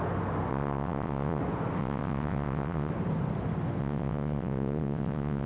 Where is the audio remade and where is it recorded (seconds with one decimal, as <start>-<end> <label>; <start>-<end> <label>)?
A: 0.0-0.5 recorded; 0.5-1.4 remade; 1.4-1.8 recorded; 1.8-2.9 remade; 2.9-3.8 recorded; 3.8-5.5 remade